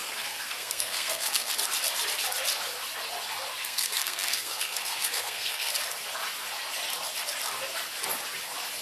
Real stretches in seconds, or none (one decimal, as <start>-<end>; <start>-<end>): 1.5-3.6; 5.7-8.8